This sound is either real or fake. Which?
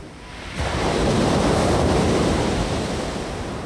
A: fake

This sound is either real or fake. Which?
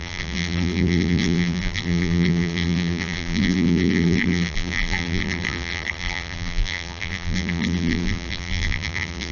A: fake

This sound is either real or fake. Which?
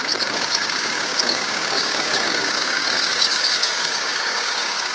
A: fake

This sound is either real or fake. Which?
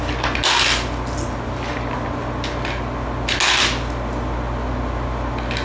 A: real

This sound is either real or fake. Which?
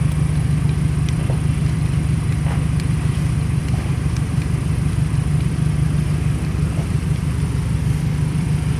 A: fake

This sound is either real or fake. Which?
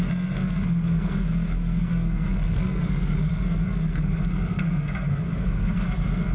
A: fake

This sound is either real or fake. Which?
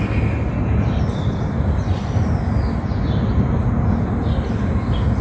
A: real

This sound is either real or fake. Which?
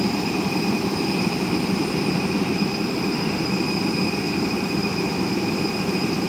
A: fake